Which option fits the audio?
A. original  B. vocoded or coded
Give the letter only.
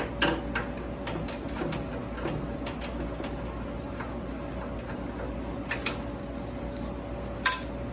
A